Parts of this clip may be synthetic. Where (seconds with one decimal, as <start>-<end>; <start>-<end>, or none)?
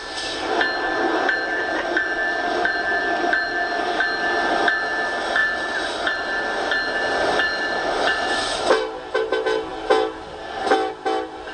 2.3-4.0